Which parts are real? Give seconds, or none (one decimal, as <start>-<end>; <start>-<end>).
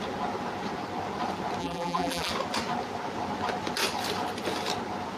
0.0-1.6; 2.3-5.2